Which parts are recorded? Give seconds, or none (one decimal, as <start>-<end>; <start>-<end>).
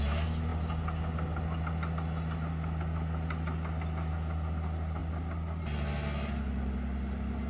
0.0-7.5